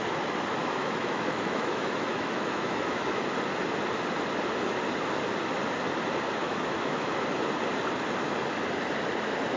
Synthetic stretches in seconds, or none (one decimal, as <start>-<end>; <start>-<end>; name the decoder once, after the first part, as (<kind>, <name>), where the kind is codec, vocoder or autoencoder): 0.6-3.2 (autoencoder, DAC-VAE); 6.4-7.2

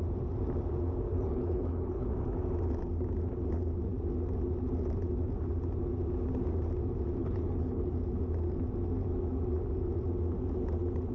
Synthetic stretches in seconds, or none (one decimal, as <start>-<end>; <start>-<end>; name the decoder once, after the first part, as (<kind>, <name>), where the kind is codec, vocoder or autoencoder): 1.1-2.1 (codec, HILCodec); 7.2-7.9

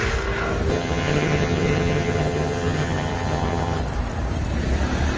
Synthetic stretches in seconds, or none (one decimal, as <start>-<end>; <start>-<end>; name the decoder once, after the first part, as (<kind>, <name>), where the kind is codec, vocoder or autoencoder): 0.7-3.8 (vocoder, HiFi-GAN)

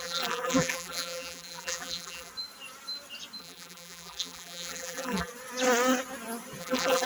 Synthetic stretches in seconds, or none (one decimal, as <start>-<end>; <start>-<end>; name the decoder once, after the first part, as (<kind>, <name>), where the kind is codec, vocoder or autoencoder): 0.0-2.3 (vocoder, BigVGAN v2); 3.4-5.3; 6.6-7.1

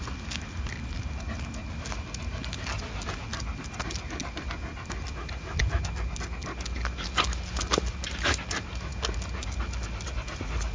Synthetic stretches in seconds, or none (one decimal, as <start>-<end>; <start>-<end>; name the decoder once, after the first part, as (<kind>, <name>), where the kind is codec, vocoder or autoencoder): none

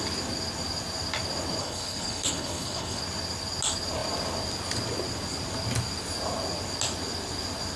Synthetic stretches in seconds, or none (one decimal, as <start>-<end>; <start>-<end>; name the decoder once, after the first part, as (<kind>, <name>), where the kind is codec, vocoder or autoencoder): 1.6-3.0 (codec, HILCodec)